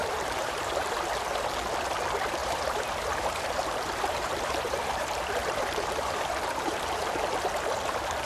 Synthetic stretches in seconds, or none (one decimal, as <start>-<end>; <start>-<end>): 0.0-1.1; 2.4-7.3